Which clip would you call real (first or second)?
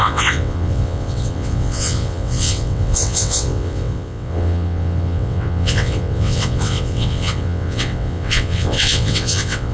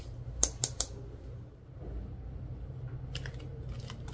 second